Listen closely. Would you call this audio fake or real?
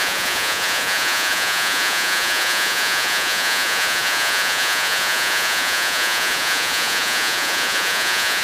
fake